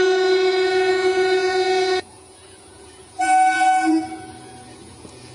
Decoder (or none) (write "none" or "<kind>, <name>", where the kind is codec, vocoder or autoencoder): vocoder, Vocos